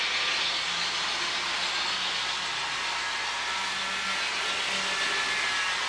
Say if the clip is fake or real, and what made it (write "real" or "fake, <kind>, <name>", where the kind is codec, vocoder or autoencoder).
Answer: real